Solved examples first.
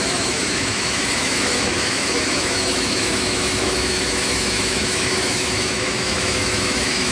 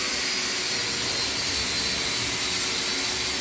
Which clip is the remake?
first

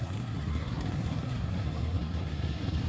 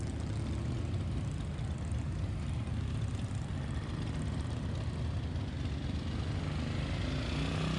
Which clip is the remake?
first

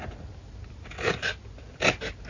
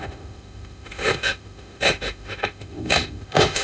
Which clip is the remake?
second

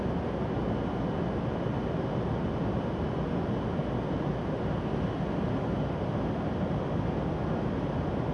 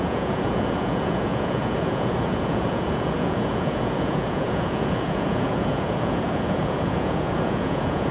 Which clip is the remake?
second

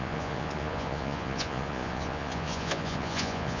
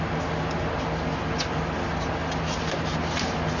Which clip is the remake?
first